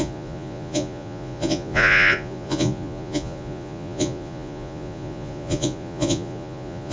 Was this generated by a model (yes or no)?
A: yes